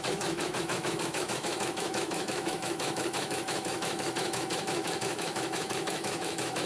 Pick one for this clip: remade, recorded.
remade